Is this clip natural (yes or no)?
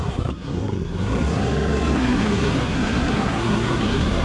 no